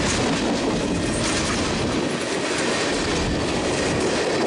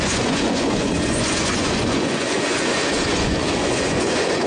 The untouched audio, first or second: first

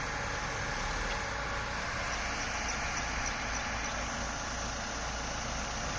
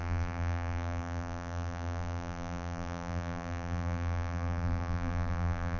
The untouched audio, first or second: first